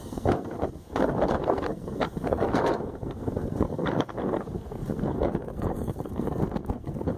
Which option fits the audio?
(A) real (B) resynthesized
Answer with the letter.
B